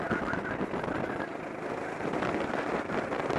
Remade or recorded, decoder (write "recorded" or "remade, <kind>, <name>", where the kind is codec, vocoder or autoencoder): recorded